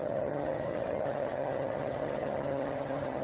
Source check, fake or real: fake